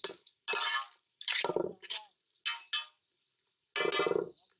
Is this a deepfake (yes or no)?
no